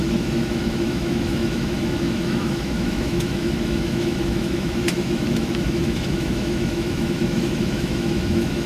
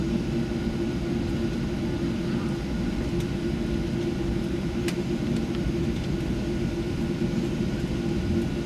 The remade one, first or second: first